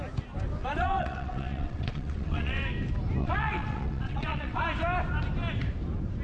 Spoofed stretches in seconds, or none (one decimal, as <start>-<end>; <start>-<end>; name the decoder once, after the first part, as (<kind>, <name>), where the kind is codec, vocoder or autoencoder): 0.6-2.6 (vocoder, WaveNeXt); 3.2-4.6